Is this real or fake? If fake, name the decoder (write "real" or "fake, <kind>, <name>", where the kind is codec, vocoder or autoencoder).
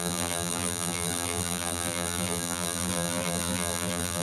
fake, vocoder, BigVGAN v2